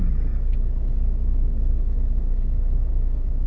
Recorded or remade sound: remade